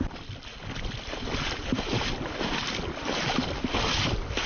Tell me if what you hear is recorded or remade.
recorded